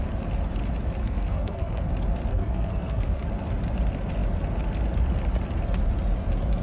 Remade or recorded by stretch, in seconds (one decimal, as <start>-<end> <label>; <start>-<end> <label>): 0.0-1.0 recorded; 1.0-1.9 remade; 1.9-2.3 recorded; 2.3-3.3 remade; 3.3-6.6 recorded